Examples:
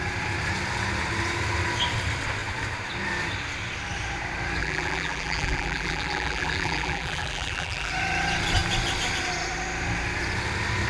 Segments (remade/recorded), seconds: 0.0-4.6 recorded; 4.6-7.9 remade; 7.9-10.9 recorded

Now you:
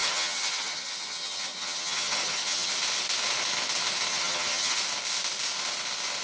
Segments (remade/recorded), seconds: 0.0-2.7 remade; 2.7-4.1 recorded; 4.1-4.8 remade; 4.8-6.2 recorded

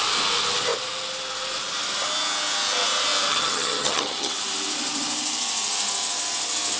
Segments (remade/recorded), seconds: 0.0-3.3 recorded; 3.3-4.3 remade; 4.3-6.8 recorded

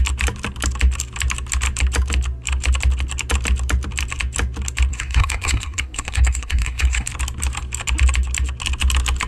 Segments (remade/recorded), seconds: 0.0-4.9 recorded; 4.9-7.1 remade; 7.1-9.3 recorded

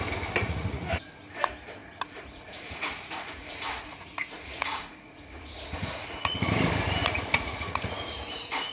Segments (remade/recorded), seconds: 0.0-0.4 recorded; 0.4-1.2 remade; 1.2-1.8 recorded; 1.8-6.5 remade; 6.5-7.0 recorded; 7.0-8.7 remade